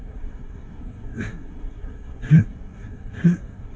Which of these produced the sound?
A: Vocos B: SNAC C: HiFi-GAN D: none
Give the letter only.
B